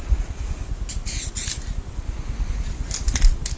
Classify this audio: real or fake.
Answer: real